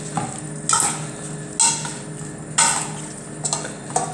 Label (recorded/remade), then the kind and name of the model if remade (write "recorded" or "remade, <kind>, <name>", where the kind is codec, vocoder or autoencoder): recorded